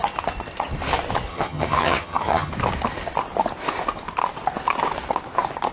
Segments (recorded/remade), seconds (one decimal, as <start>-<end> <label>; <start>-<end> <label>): 0.0-1.3 recorded; 1.3-2.5 remade; 2.5-5.7 recorded